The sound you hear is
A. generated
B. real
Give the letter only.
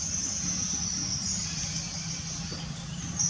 B